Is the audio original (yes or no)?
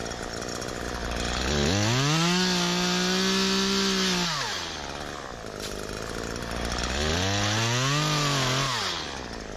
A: yes